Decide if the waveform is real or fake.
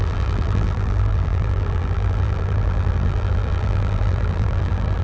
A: fake